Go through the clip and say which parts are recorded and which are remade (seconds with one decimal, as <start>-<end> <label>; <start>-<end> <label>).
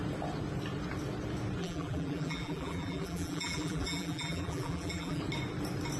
0.0-1.6 recorded; 1.6-5.2 remade; 5.2-6.0 recorded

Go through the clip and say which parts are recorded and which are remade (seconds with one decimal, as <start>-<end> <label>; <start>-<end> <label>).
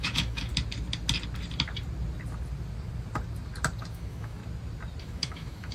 0.0-0.5 remade; 0.5-3.9 recorded; 3.9-4.4 remade; 4.4-5.0 recorded; 5.0-5.7 remade